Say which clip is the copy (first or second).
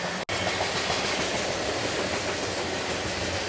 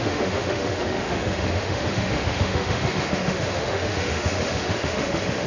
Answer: second